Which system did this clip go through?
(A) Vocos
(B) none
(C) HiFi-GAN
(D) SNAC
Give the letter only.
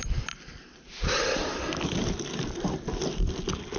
B